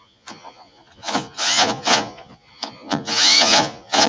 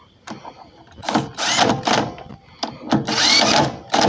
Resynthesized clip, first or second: first